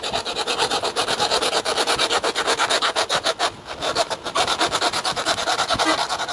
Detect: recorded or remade recorded